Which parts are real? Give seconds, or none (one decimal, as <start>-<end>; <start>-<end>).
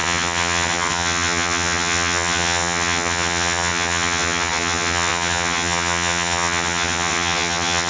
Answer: none